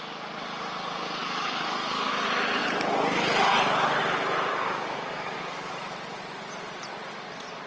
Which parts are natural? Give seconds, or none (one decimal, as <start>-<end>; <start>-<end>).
0.0-1.2; 2.1-4.5; 5.7-7.7